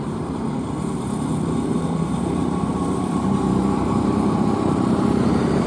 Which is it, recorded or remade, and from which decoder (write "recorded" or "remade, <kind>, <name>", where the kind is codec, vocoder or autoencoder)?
remade, vocoder, BigVGAN v2